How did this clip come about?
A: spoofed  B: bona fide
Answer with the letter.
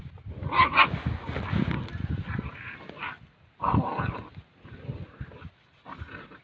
B